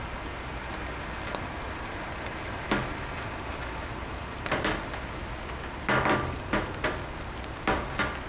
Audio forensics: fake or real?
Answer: real